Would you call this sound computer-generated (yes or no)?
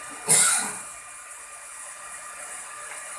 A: no